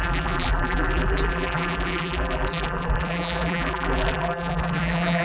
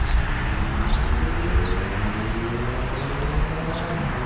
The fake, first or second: first